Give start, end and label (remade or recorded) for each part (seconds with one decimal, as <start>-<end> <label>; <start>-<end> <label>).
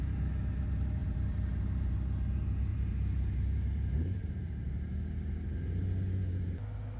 0.0-1.0 recorded; 1.0-1.9 remade; 1.9-2.7 recorded; 2.7-4.3 remade; 4.3-7.0 recorded